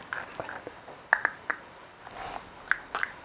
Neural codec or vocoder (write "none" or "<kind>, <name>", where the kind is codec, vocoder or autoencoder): none